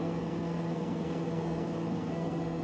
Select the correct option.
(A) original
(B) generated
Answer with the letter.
B